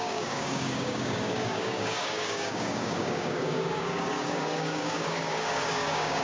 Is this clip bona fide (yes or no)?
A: no